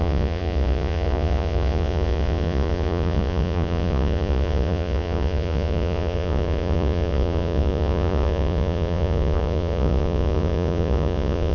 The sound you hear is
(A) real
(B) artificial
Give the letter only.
B